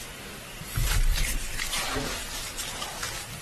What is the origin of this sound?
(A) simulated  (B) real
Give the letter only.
A